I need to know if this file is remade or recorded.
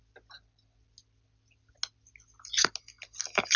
recorded